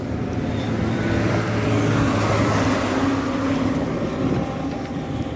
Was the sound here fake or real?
fake